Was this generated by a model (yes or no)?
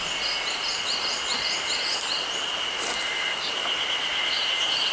no